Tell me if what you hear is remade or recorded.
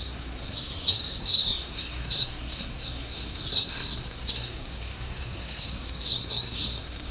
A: remade